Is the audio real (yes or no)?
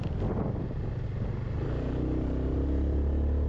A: yes